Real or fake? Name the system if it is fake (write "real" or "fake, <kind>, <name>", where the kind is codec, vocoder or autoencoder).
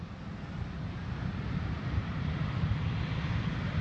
real